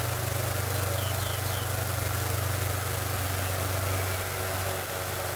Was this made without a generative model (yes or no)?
yes